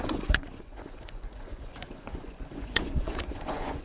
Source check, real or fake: fake